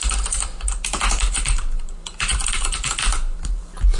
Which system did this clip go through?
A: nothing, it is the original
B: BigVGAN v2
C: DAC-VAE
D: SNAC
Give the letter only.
B